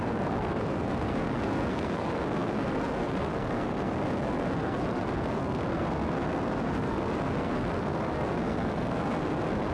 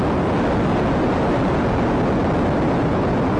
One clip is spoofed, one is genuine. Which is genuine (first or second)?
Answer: second